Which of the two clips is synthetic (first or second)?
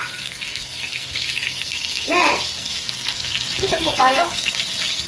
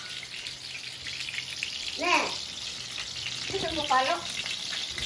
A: first